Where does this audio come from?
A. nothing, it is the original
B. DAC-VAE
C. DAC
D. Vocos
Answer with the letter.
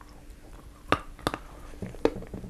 A